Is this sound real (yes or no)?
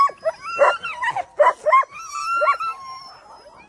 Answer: yes